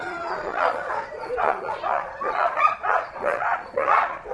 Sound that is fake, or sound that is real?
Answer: fake